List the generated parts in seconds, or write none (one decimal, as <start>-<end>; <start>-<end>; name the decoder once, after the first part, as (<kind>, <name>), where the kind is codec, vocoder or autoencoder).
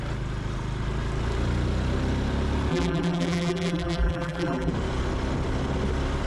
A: 2.7-4.7 (vocoder, BigVGAN v2)